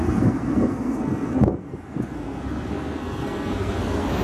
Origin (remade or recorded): remade